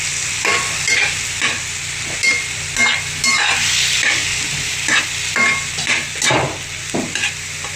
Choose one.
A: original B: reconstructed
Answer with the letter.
A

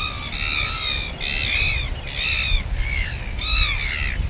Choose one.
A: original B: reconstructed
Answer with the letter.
A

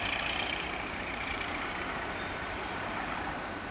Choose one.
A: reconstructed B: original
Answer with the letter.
A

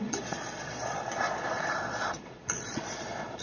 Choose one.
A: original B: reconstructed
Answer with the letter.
B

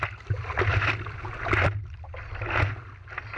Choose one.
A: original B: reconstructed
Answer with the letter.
A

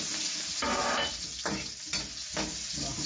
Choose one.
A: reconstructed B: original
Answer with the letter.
B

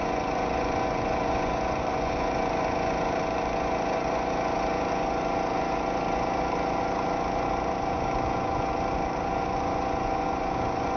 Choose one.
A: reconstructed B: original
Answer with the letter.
A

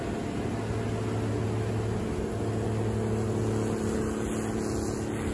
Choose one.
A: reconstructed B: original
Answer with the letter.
B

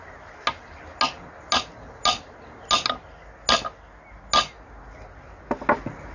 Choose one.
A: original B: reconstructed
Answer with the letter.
A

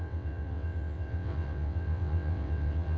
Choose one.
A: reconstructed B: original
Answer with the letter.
A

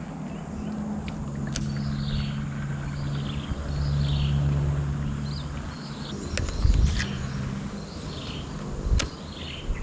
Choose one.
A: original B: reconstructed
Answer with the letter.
A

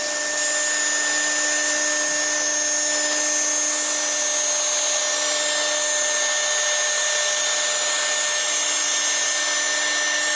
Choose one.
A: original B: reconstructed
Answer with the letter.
A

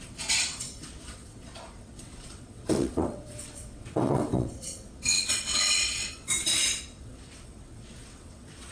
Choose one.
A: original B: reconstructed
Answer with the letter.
B